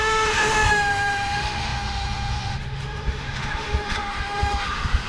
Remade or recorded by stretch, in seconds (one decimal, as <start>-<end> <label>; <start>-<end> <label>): 0.0-5.1 remade